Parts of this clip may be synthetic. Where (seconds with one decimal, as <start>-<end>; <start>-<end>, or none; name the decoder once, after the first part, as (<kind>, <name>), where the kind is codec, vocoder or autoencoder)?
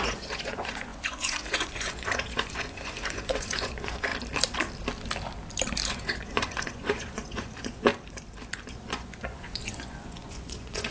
0.0-4.1 (vocoder, Vocos); 5.9-7.9; 8.7-10.9